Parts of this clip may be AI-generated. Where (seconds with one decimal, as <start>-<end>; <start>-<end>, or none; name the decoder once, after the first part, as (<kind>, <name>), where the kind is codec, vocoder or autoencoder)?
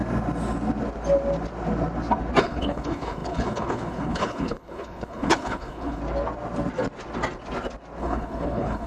2.4-6.0 (codec, HILCodec); 8.0-8.9